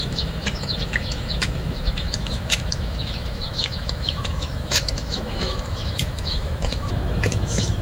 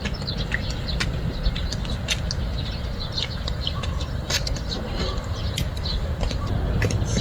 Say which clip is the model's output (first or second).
first